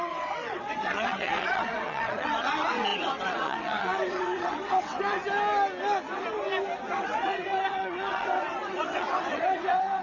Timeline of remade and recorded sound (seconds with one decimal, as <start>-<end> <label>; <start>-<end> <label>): 0.0-5.2 remade; 5.2-7.0 recorded; 7.0-10.0 remade